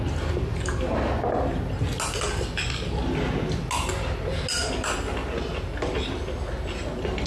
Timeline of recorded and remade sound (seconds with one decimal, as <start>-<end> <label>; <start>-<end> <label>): 0.0-7.3 recorded